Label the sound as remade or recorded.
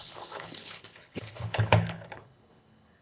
remade